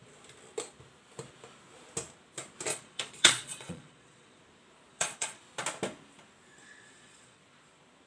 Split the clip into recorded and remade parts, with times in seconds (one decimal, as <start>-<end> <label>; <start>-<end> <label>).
0.0-2.7 recorded; 2.7-4.4 remade; 4.4-4.9 recorded; 4.9-5.4 remade; 5.4-6.6 recorded; 6.6-7.4 remade; 7.4-8.1 recorded